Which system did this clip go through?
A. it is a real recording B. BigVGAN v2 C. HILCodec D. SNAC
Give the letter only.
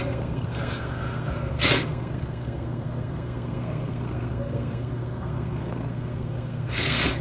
D